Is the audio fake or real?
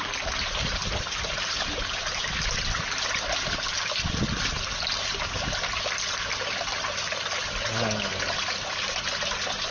real